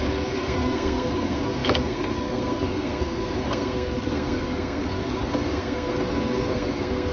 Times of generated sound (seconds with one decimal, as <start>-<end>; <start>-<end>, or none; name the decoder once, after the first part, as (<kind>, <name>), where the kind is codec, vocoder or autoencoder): 0.0-7.1 (codec, SNAC)